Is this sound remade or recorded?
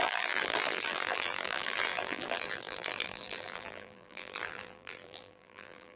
remade